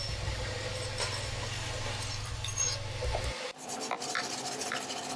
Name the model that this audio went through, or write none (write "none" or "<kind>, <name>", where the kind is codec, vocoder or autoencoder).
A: none